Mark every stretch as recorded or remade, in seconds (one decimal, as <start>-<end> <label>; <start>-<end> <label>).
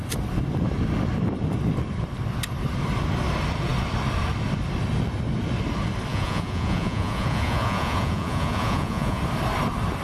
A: 0.0-6.1 recorded; 6.1-9.2 remade; 9.2-10.0 recorded